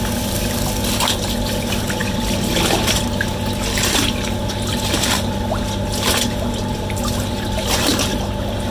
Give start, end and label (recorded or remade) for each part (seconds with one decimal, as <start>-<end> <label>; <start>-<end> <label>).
0.0-8.7 recorded

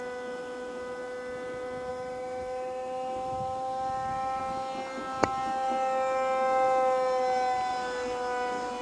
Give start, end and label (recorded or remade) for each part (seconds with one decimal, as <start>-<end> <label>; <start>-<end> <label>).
0.0-1.9 recorded; 1.9-4.4 remade; 4.4-8.8 recorded